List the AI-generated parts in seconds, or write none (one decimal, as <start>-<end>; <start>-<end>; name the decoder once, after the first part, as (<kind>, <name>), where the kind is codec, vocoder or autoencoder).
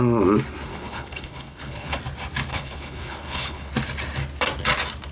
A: 0.7-2.0 (codec, HILCodec); 2.5-3.7